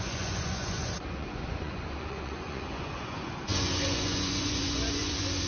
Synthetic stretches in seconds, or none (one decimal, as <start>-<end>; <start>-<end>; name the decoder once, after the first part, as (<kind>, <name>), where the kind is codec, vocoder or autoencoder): 0.0-5.5 (vocoder, Vocos)